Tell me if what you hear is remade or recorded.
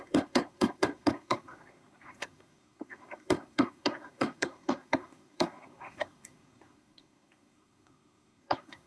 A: remade